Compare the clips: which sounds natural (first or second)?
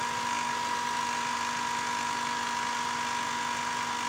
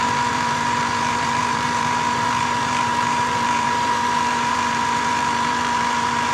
first